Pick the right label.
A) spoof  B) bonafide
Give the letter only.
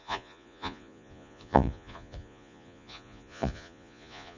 A